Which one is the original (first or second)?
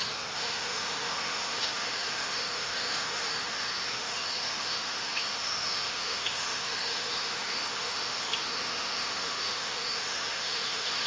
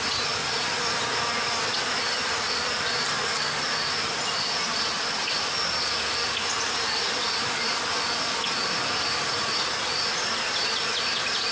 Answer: second